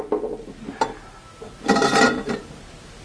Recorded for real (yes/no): yes